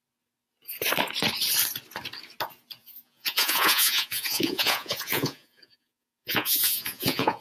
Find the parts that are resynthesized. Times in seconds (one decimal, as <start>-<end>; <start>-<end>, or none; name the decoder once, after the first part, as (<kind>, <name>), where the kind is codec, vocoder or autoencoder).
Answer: 2.8-7.4 (vocoder, Vocos)